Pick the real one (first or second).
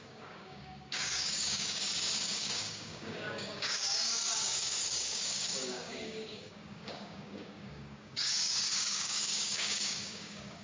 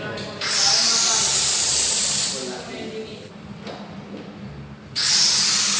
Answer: second